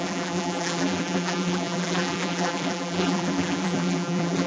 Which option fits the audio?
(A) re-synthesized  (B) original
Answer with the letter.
A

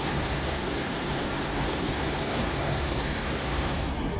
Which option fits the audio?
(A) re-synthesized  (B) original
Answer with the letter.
A